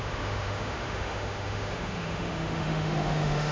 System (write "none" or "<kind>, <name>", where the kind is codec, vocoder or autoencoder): autoencoder, DAC-VAE